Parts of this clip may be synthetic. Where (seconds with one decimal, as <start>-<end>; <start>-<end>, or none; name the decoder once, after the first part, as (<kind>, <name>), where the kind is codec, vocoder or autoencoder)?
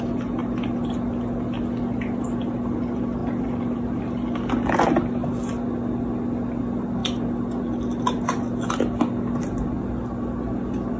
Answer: none